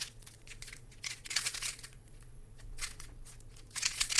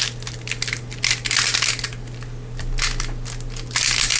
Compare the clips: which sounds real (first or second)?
second